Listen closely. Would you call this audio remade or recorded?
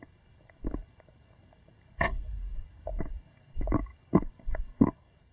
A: remade